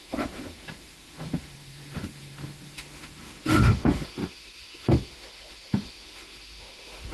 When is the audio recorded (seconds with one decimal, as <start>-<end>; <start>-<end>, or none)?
none